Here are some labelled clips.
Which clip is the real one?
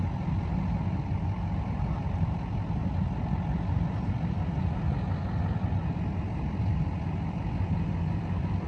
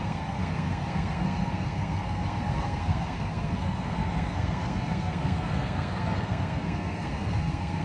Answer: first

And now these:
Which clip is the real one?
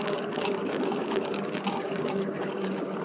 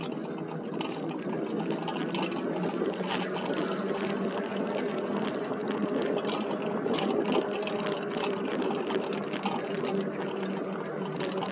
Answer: second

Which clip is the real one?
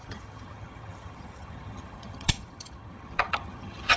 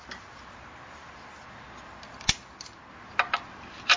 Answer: second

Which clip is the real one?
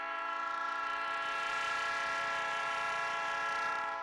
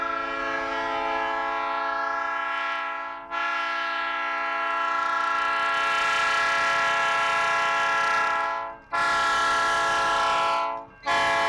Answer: second